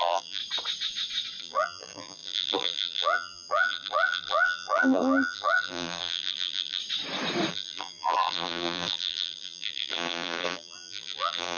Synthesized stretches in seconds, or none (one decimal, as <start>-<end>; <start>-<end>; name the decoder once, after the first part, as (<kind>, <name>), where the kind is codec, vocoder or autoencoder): 0.0-0.4 (vocoder, BigVGAN v2); 1.4-6.8; 7.5-11.6